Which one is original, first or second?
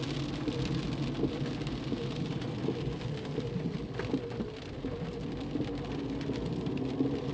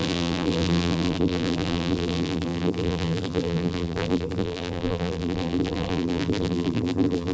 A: first